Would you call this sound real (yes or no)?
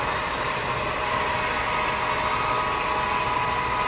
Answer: yes